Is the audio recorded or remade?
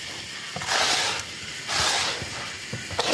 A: recorded